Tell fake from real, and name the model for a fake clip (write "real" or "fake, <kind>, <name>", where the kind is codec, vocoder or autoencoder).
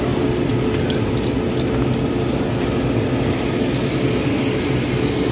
real